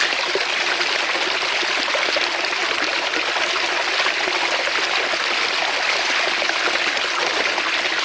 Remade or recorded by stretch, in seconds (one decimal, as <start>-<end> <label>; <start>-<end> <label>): 0.0-8.0 recorded